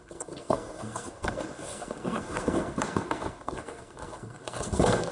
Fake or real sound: fake